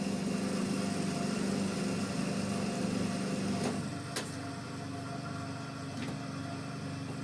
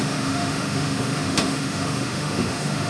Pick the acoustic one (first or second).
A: first